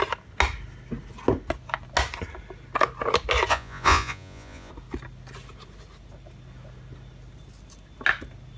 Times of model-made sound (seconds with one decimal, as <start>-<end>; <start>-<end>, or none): 3.5-4.7